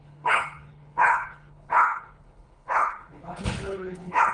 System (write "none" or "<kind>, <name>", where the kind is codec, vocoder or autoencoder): codec, HILCodec